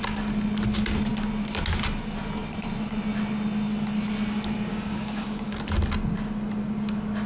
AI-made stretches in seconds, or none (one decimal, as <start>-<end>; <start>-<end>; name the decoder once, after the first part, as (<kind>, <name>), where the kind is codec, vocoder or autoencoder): 4.7-5.6 (codec, DAC)